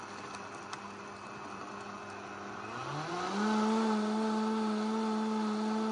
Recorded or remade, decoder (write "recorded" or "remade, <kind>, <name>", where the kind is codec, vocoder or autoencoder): recorded